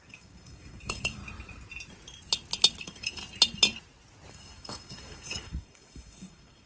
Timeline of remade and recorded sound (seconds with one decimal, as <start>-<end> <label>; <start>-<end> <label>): 0.0-1.2 remade; 1.2-2.8 recorded; 2.8-3.2 remade; 3.2-4.3 recorded; 4.3-6.7 remade